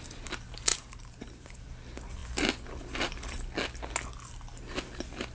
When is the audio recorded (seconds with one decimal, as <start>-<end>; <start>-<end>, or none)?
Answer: 0.0-0.7; 1.6-5.3